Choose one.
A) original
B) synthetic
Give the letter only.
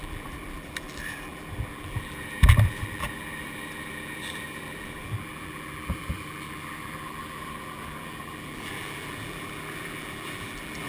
B